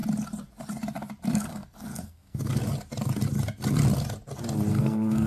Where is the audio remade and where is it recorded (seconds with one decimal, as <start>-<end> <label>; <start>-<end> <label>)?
0.0-1.3 recorded; 1.3-2.6 remade; 2.6-4.7 recorded; 4.7-5.3 remade